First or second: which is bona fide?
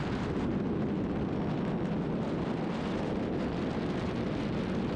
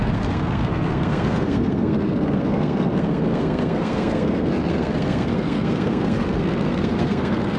first